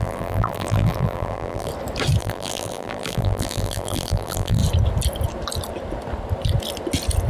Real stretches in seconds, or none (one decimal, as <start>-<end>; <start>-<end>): 1.7-2.2; 4.6-7.3